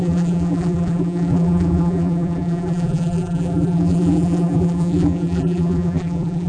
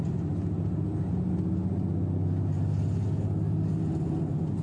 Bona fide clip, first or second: second